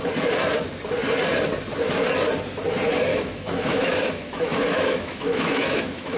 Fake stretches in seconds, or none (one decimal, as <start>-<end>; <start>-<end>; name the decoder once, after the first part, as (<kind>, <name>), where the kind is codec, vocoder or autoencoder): 3.1-6.2 (autoencoder, DAC-VAE)